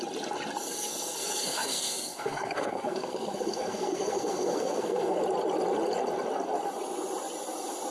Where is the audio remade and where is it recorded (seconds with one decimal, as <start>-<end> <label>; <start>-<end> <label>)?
0.0-0.6 recorded; 0.6-5.2 remade; 5.2-7.9 recorded